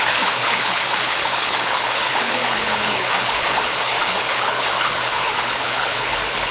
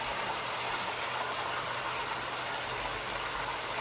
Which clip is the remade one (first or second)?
first